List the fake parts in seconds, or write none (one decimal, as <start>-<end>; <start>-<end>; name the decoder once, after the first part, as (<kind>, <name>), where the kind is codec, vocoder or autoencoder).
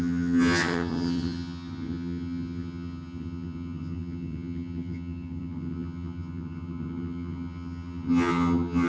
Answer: 0.0-8.9 (vocoder, HiFi-GAN)